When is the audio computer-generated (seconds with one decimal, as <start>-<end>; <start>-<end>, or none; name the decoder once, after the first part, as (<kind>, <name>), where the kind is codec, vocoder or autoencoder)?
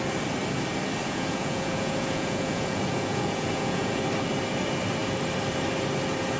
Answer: 1.0-4.0 (vocoder, Vocos)